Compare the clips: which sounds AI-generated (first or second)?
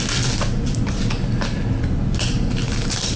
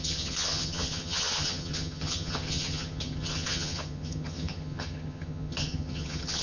second